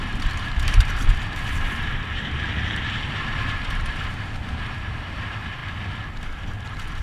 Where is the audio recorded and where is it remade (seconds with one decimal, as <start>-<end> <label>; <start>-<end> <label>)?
0.0-5.6 remade; 5.6-6.1 recorded; 6.1-7.0 remade